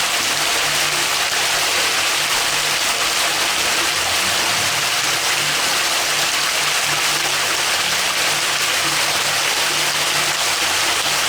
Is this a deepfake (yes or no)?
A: no